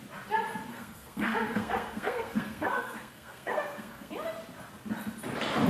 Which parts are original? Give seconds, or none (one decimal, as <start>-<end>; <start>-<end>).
0.0-0.7; 4.1-5.7